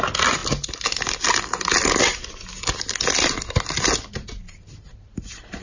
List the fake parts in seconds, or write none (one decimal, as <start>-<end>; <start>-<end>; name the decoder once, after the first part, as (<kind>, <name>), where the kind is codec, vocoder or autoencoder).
none